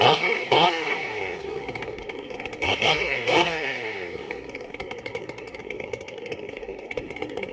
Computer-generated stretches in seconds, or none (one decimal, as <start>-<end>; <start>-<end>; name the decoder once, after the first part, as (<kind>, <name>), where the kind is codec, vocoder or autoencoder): 0.0-7.5 (codec, SNAC)